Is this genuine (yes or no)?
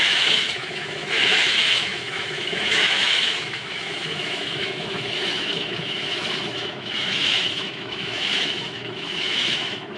no